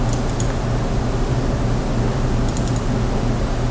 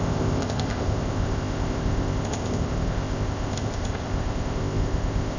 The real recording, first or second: first